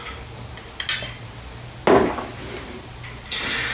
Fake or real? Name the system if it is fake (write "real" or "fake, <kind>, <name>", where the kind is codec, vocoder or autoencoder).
real